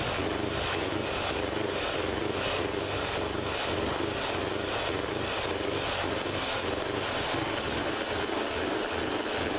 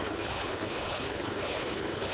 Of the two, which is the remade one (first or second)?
second